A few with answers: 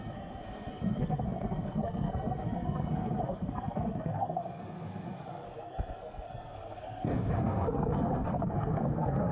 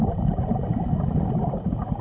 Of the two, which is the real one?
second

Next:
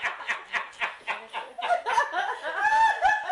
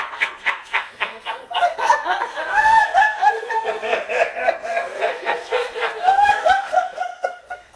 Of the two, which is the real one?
first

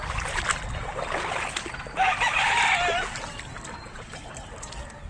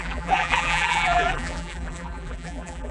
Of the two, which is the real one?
first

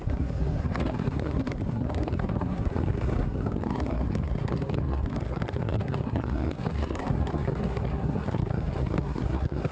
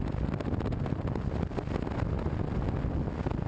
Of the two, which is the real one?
second